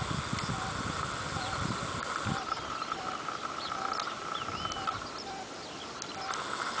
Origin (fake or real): real